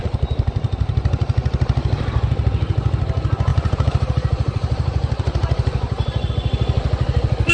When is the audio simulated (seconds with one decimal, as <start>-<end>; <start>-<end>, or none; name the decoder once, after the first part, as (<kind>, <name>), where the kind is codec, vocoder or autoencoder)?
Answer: 3.5-6.3 (vocoder, BigVGAN v2)